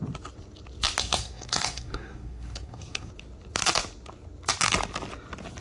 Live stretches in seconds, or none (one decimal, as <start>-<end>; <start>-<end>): 0.0-1.0; 3.1-5.6